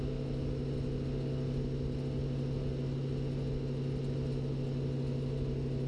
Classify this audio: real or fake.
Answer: real